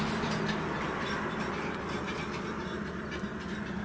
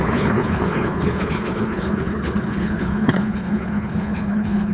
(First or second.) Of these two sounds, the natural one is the first